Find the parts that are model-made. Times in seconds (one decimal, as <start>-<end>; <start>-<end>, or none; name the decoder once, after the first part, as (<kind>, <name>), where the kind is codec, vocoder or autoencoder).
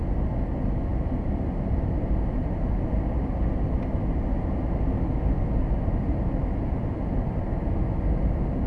none